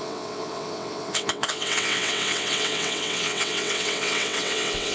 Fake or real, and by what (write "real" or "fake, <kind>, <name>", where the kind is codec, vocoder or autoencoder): fake, vocoder, WaveNeXt